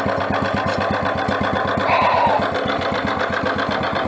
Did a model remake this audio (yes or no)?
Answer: no